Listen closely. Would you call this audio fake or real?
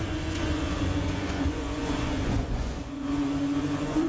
fake